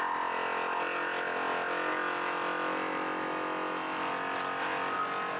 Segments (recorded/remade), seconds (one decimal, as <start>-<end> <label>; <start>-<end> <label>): 0.0-5.4 recorded